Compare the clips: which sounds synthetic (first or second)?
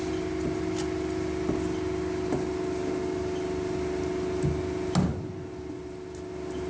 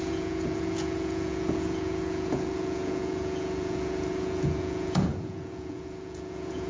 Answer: second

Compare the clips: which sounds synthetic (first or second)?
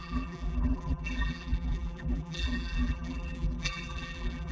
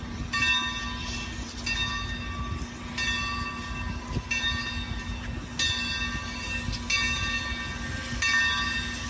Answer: first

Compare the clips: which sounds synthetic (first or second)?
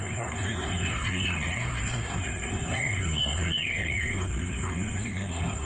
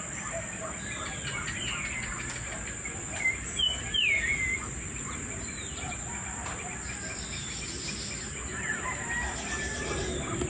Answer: first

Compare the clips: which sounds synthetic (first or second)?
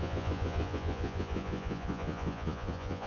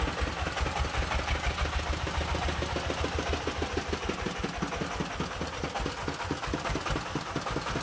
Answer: first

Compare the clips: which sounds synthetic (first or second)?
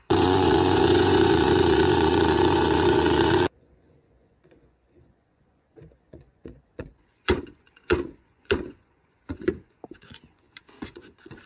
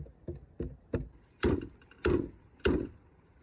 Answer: first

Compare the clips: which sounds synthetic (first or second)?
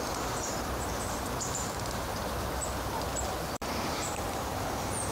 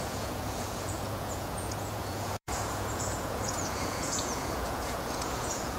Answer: second